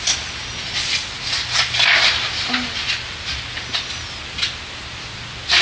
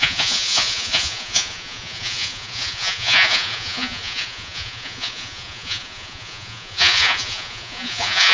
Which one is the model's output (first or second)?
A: second